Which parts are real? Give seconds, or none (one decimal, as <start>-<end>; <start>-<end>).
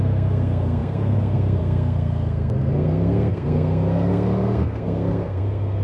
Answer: none